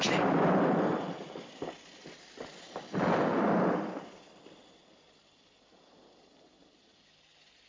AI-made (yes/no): yes